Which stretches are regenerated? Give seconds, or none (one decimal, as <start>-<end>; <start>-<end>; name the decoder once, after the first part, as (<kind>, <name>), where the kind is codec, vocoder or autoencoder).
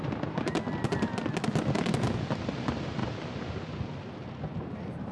none